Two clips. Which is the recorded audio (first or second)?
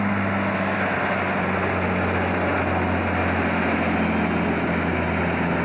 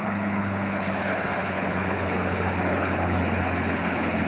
first